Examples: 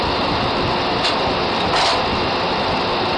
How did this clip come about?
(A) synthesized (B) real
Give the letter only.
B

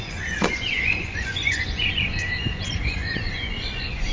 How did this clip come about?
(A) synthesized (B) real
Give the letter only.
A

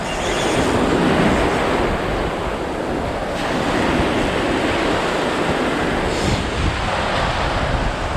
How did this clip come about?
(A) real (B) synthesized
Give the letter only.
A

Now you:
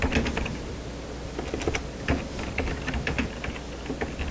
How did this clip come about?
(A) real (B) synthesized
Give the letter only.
A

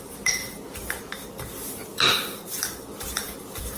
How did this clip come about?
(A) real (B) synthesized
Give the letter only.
A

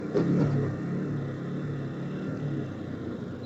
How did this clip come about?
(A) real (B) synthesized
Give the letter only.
A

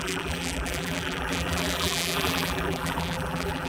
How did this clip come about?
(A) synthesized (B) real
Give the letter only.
A